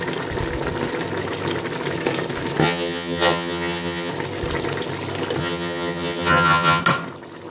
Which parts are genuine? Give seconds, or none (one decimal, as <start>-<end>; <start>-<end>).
0.0-2.6; 4.1-5.4; 6.8-7.5